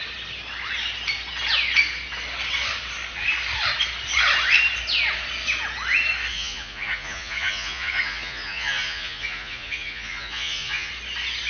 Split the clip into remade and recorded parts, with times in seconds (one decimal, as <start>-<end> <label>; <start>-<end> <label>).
0.0-6.3 recorded; 6.3-10.9 remade; 10.9-11.5 recorded